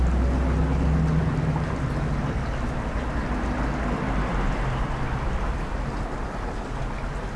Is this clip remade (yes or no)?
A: no